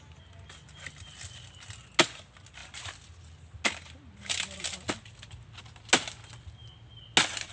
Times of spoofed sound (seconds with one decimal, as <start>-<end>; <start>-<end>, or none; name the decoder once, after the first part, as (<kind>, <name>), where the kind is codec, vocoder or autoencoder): none